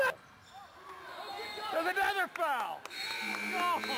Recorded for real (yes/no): yes